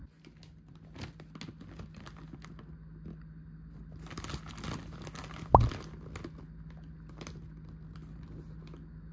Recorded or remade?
recorded